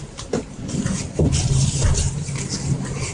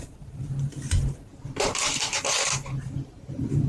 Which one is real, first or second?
first